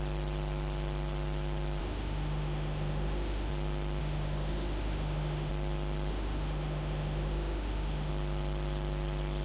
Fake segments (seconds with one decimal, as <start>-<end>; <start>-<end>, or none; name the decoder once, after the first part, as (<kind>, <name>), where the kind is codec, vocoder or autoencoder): 1.8-3.5 (autoencoder, DAC-VAE); 4.0-5.5; 6.1-8.1